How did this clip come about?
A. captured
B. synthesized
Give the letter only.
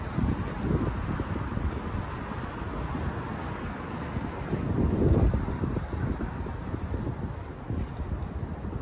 A